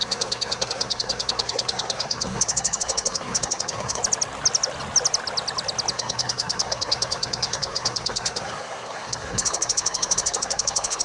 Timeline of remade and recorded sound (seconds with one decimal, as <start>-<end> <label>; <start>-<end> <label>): 0.0-4.0 remade; 4.0-5.9 recorded; 5.9-11.0 remade